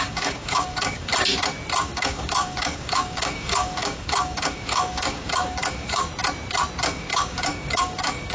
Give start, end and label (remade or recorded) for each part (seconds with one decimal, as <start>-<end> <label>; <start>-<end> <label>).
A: 0.0-1.1 remade; 1.1-1.8 recorded; 1.8-6.1 remade; 6.1-6.8 recorded; 6.8-8.3 remade